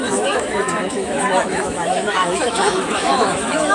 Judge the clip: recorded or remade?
remade